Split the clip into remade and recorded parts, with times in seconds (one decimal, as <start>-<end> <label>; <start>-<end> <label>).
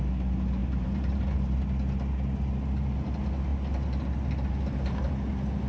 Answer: 0.0-0.6 recorded; 0.6-1.2 remade; 1.2-5.7 recorded